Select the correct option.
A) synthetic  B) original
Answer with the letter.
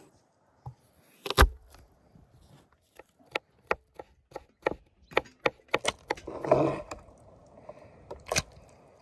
B